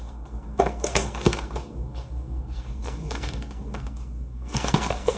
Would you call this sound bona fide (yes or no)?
no